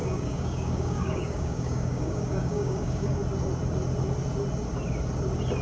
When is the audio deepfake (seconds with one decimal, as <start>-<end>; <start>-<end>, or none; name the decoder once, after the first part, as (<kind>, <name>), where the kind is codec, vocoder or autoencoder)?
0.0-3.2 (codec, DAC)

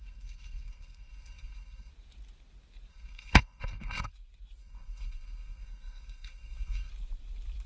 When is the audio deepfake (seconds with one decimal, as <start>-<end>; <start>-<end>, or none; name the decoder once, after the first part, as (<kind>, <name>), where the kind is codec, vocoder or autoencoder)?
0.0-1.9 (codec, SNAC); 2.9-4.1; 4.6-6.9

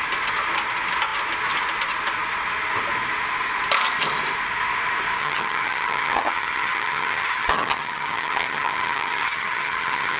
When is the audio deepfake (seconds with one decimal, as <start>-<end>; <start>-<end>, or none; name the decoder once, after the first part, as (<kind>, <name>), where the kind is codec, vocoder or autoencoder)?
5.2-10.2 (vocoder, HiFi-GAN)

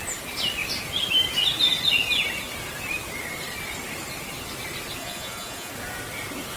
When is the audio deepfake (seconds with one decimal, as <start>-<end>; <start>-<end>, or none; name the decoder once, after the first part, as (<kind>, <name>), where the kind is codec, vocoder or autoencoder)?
5.0-5.7 (vocoder, Vocos)